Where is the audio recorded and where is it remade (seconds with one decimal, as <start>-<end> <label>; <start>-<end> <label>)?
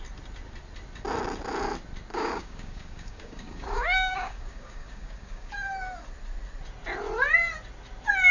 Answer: 0.0-2.1 recorded; 2.1-5.5 remade; 5.5-8.3 recorded